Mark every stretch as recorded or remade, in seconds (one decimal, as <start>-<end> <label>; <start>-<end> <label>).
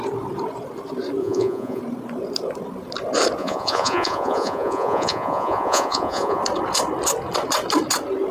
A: 0.0-1.2 recorded; 1.2-1.8 remade; 1.8-3.4 recorded; 3.4-6.4 remade; 6.4-8.3 recorded